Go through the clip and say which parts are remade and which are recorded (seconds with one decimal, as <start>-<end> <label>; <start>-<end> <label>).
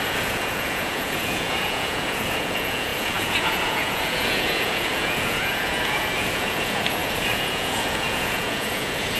0.0-9.2 remade